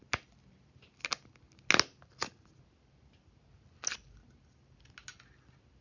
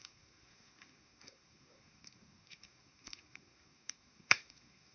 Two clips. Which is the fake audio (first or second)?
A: second